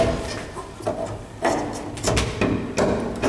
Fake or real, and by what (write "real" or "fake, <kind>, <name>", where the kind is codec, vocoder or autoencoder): real